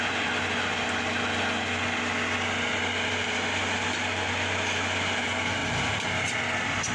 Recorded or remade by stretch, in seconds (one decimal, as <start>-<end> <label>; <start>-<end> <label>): 0.0-5.6 recorded; 5.6-6.1 remade; 6.1-6.9 recorded